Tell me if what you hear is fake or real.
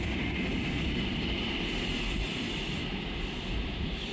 real